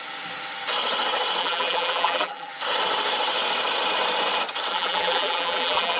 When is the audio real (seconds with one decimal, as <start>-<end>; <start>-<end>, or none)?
0.0-1.4; 2.5-4.7